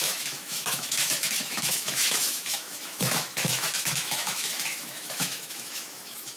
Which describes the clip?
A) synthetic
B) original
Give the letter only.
A